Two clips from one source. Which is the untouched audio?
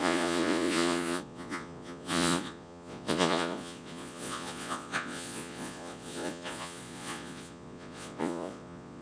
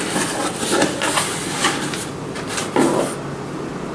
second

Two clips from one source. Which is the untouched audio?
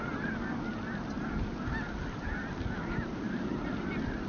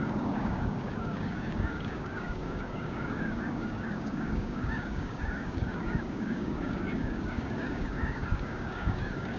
first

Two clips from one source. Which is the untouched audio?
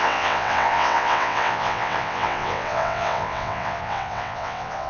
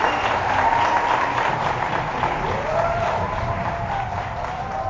second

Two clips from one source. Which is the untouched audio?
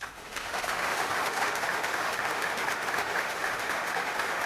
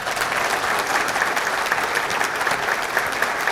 second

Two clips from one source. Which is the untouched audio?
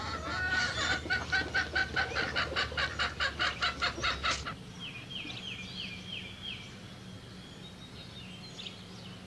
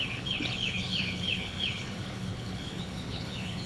first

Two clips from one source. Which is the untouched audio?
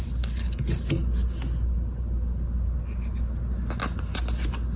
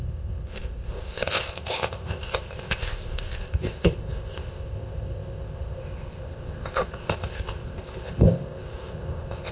first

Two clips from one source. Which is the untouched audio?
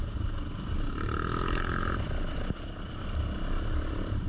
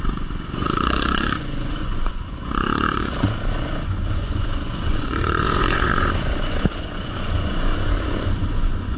first